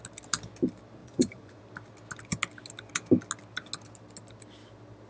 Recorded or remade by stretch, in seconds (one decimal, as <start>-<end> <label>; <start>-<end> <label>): 0.0-1.0 recorded; 1.0-1.6 remade; 1.6-5.1 recorded